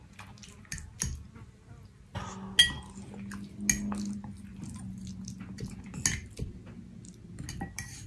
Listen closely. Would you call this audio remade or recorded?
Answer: recorded